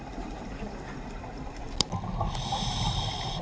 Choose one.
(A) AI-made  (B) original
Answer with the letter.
B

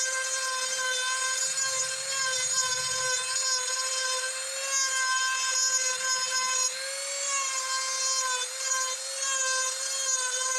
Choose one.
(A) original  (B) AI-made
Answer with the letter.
A